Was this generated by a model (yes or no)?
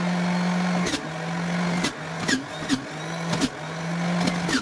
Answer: no